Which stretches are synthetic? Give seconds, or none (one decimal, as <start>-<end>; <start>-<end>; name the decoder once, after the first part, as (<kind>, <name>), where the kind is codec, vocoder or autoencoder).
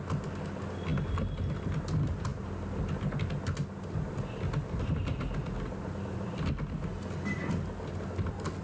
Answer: none